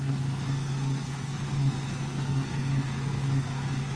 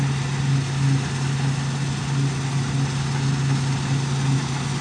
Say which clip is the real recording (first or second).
second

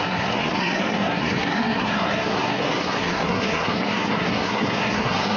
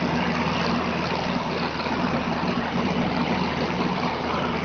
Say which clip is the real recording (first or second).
second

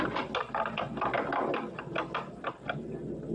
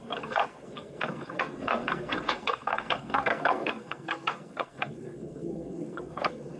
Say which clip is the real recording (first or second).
first